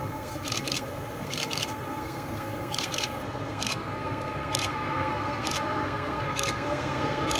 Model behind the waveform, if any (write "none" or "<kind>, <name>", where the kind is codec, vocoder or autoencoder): codec, SNAC